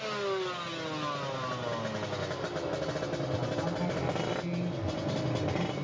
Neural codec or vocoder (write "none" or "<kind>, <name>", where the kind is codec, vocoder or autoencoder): none